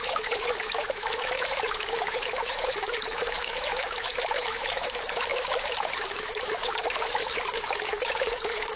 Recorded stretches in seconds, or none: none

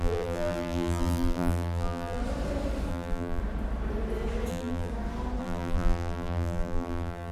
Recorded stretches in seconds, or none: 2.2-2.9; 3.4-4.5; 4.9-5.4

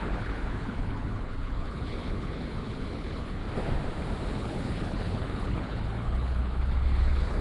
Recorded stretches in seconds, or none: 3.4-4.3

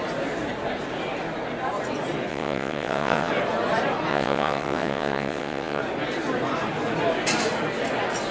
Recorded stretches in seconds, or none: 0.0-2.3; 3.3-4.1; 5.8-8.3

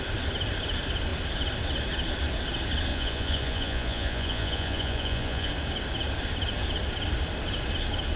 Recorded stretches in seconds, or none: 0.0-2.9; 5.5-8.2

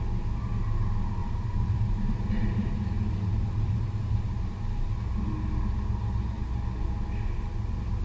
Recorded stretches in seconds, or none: 0.0-1.2; 4.9-8.0

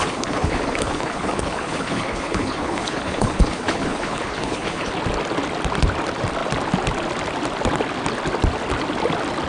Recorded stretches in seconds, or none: 4.9-9.5